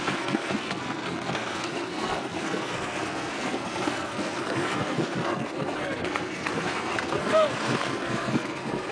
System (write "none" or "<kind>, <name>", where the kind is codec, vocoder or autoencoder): codec, SNAC